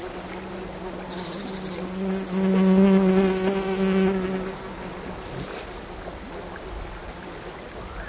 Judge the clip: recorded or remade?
recorded